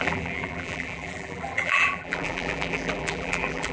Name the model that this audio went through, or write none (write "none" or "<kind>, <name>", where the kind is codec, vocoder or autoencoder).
vocoder, BigVGAN v2